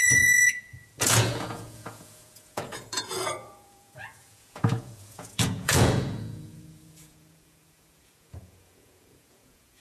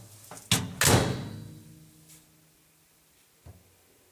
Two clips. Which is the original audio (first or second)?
second